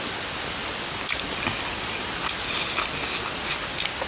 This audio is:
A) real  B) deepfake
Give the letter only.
A